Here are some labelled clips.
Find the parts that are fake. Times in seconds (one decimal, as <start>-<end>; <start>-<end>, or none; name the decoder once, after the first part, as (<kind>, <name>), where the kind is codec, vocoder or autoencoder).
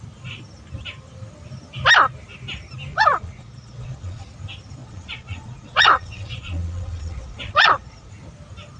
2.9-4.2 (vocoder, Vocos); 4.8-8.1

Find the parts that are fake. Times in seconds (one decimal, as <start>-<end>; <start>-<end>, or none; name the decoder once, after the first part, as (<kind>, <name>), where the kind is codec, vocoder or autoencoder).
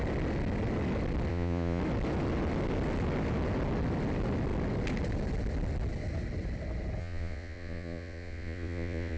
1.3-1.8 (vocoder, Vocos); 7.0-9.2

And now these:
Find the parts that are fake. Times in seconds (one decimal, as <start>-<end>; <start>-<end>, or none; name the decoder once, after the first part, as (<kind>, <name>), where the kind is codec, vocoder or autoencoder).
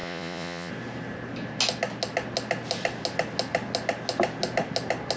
0.0-0.7 (vocoder, Vocos)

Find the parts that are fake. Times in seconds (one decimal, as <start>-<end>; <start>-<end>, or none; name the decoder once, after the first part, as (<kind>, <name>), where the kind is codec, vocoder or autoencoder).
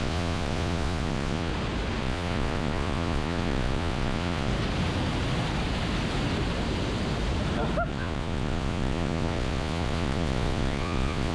0.0-1.5 (vocoder, Vocos); 2.0-4.5; 7.9-11.3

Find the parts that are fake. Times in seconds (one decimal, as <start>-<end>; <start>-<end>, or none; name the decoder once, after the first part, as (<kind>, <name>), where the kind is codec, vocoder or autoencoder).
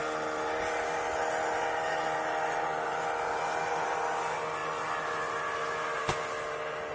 none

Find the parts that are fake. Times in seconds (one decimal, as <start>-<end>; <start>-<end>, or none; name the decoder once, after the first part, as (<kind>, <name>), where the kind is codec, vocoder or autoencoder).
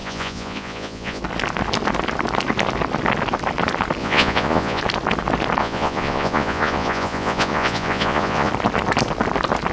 0.0-1.2 (vocoder, Vocos); 4.0-4.8; 5.6-8.5